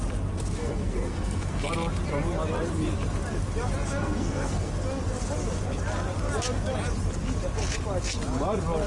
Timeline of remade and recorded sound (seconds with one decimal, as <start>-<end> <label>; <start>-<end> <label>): 0.0-0.6 recorded; 0.6-1.7 remade; 1.7-4.0 recorded; 4.0-4.7 remade; 4.7-8.9 recorded